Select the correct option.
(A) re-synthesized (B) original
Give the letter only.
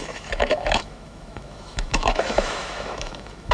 A